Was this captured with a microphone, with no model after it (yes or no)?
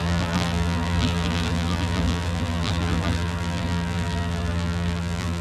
no